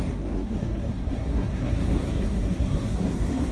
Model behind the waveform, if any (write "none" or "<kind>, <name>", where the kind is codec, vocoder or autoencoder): codec, SNAC